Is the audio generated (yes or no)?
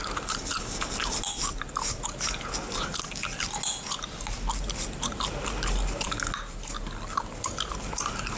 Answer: no